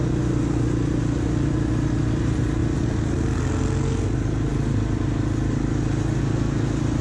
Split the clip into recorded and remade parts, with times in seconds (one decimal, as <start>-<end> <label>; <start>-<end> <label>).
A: 0.0-7.0 recorded